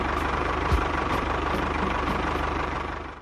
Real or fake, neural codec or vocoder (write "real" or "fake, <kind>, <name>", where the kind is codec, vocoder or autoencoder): fake, vocoder, BigVGAN v2